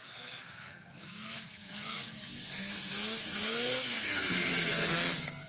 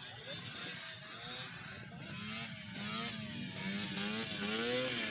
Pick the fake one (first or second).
first